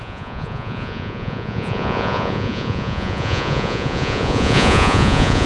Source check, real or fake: fake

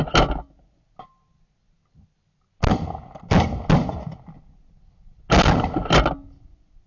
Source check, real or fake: real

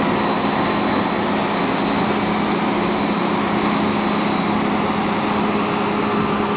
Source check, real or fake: real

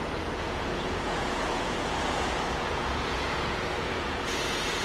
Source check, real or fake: fake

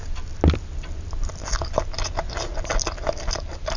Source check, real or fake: real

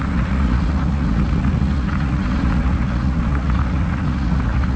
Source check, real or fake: fake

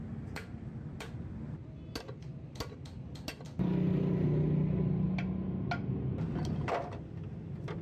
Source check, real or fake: real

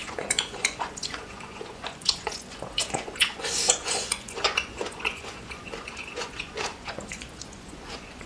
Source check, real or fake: fake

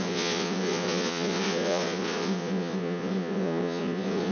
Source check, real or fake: fake